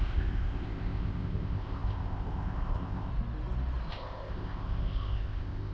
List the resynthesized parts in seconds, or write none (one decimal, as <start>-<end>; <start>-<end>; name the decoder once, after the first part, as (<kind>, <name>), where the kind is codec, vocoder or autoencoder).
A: 0.0-3.1 (codec, ZipCodec); 3.9-5.7